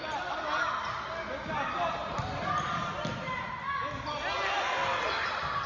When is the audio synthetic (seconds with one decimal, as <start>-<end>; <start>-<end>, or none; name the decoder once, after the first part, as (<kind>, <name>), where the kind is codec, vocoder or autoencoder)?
none